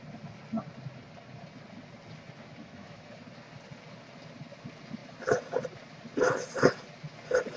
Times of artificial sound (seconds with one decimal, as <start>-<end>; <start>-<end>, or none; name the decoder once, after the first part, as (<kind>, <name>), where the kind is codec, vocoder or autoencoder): 2.6-3.1 (autoencoder, DAC-VAE)